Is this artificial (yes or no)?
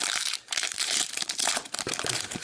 yes